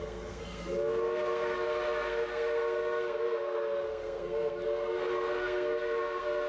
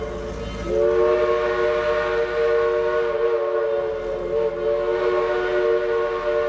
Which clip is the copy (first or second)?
first